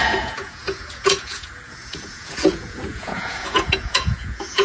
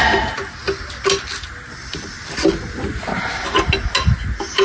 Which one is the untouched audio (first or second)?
second